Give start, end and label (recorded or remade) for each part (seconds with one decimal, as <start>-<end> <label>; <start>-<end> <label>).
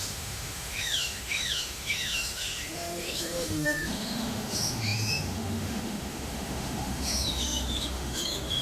0.0-8.6 remade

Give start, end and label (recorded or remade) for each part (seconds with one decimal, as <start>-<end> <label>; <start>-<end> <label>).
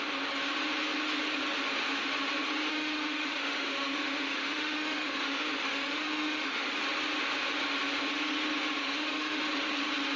0.0-2.7 recorded; 2.7-6.7 remade; 6.7-8.8 recorded; 8.8-9.4 remade; 9.4-10.2 recorded